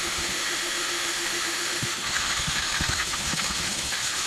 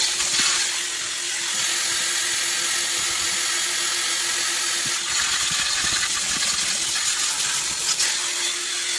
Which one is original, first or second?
second